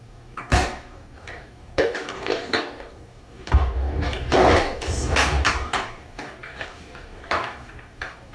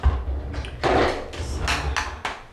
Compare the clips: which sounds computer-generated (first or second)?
first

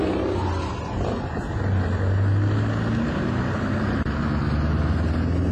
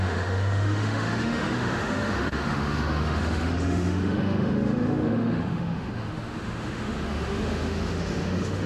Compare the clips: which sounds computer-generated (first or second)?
second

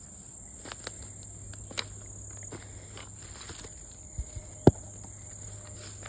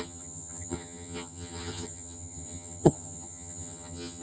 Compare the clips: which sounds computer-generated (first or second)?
second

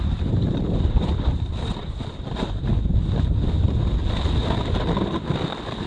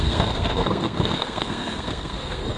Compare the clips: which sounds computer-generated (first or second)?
second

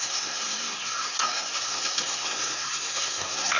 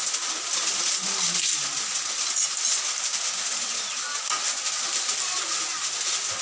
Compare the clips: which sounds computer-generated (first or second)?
first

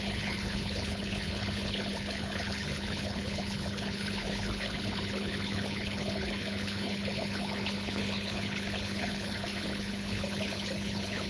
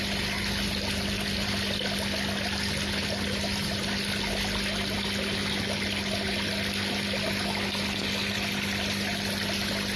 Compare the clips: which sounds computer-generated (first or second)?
first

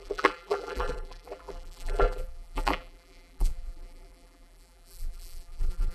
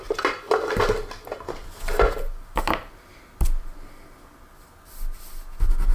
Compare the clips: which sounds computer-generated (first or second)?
first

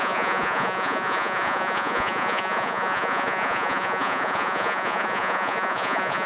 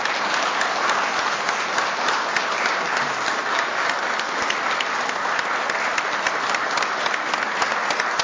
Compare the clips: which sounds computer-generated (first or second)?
first